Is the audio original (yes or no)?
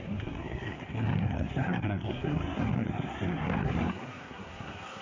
no